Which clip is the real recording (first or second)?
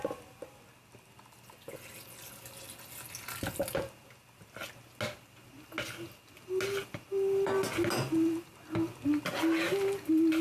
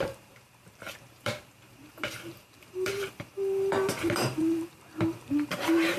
first